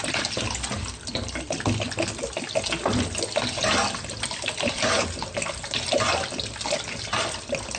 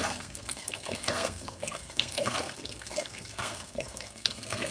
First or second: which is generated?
second